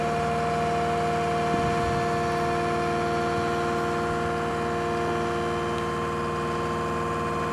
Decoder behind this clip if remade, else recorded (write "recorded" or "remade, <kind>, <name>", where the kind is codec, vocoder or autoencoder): recorded